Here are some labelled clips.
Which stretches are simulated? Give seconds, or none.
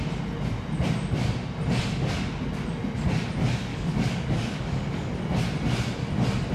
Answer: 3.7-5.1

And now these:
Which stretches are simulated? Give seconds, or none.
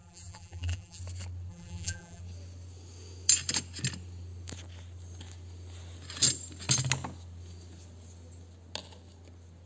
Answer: 0.0-1.0; 1.5-2.2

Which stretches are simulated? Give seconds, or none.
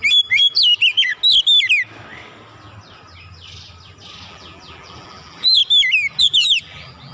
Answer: 0.0-1.1; 4.3-5.6; 6.2-7.1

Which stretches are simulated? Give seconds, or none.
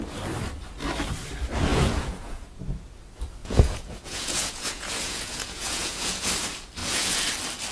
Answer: 1.7-2.6; 3.4-6.3; 6.8-7.3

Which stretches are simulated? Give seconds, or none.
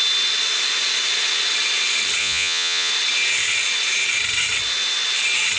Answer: 2.2-2.9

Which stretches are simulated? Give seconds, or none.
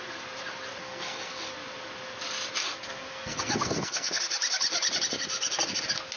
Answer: 0.8-1.5; 2.6-4.2